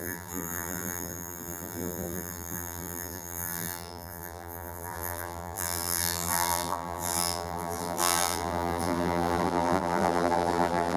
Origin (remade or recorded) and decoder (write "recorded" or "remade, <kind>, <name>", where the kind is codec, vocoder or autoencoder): remade, vocoder, BigVGAN v2